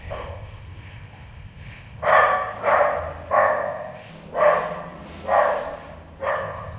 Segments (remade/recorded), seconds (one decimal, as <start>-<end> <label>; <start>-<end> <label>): 0.0-2.1 remade; 2.1-3.3 recorded; 3.3-4.1 remade; 4.1-6.3 recorded; 6.3-6.8 remade